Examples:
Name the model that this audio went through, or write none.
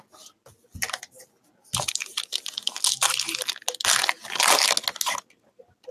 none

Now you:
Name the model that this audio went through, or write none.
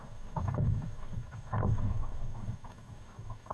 codec, DAC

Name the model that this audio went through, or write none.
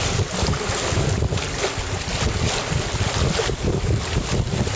none